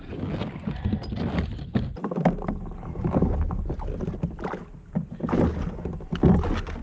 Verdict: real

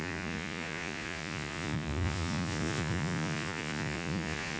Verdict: fake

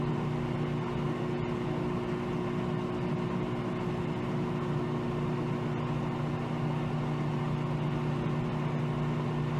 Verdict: real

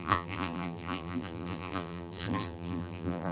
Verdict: fake